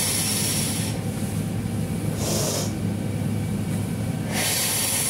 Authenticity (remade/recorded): recorded